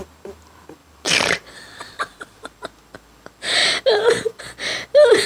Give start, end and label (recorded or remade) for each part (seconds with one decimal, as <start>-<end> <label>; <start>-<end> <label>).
0.0-0.8 recorded; 0.8-2.5 remade; 2.5-3.6 recorded; 3.6-4.4 remade; 4.4-5.3 recorded

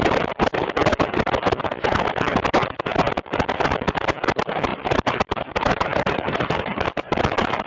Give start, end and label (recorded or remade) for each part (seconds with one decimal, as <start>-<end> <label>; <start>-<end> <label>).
0.0-4.7 recorded; 4.7-7.2 remade; 7.2-7.7 recorded

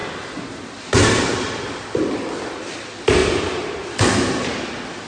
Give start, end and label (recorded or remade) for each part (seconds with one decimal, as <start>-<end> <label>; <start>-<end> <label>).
0.0-3.2 recorded; 3.2-4.5 remade; 4.5-5.1 recorded

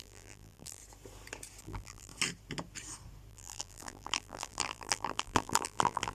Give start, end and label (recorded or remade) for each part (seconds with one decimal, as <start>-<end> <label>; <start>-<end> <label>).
0.0-0.8 remade; 0.8-1.6 recorded; 1.6-2.1 remade; 2.1-3.3 recorded; 3.3-6.1 remade

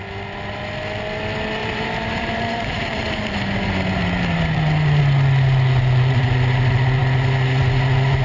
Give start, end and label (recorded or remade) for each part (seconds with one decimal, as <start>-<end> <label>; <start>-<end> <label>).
0.0-1.6 recorded; 1.6-5.0 remade; 5.0-8.2 recorded

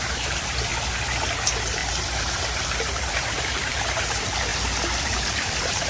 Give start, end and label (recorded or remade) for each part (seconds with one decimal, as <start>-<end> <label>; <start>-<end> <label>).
0.0-0.7 remade; 0.7-1.4 recorded; 1.4-4.5 remade; 4.5-5.0 recorded; 5.0-5.9 remade

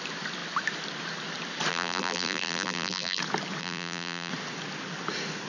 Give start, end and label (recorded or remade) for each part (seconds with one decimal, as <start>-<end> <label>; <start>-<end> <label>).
0.0-1.7 recorded; 1.7-3.2 remade; 3.2-3.6 recorded; 3.6-4.3 remade; 4.3-5.5 recorded

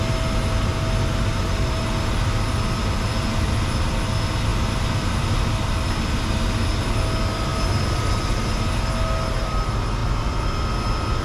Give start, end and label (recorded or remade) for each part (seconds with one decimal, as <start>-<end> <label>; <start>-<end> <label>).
0.0-1.3 recorded; 1.3-1.9 remade; 1.9-11.2 recorded